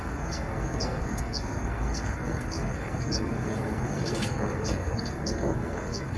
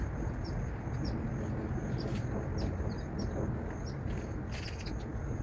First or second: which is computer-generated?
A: first